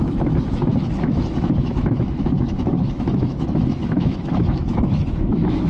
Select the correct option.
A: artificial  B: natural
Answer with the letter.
A